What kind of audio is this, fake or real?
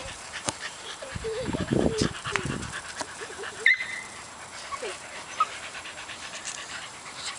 fake